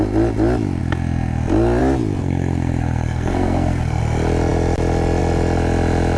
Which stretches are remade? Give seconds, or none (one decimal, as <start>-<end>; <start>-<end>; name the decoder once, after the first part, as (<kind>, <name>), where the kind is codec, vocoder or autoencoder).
2.2-4.0 (codec, SNAC)